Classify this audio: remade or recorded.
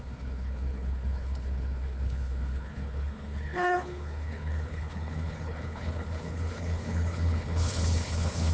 remade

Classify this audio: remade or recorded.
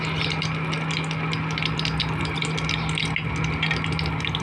recorded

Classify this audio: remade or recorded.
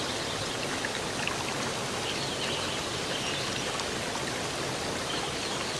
recorded